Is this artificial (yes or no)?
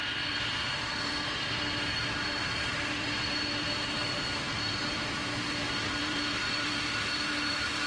yes